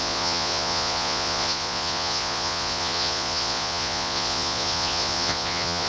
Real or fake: fake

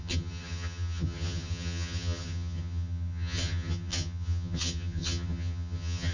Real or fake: fake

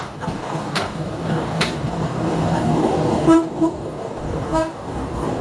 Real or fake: fake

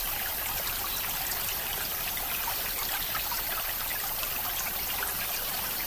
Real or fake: real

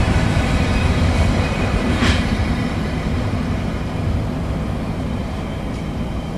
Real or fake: fake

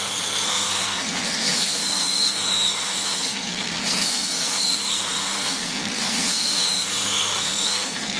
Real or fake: fake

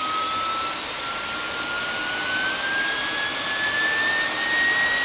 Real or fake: real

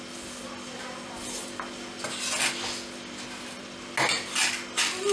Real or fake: real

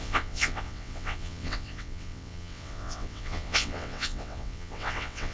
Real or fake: fake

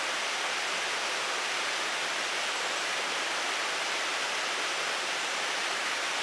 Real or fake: fake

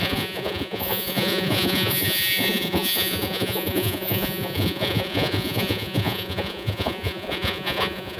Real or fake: fake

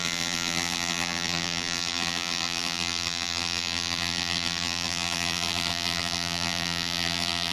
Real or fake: fake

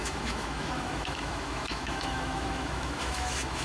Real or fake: fake